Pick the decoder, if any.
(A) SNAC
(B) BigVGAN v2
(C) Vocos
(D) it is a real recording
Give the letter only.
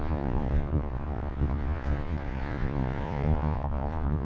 C